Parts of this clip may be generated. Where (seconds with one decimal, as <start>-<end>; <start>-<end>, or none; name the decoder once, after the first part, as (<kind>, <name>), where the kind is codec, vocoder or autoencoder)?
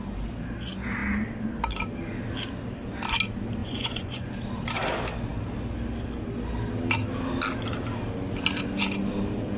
3.6-4.3 (vocoder, Vocos)